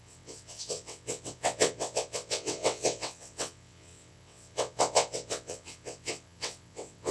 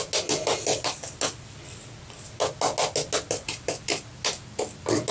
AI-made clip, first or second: first